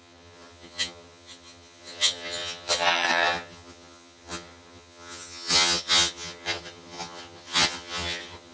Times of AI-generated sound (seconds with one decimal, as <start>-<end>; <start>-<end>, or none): 0.0-8.5